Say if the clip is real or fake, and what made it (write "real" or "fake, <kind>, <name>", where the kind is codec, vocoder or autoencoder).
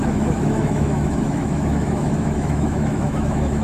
fake, autoencoder, DAC-VAE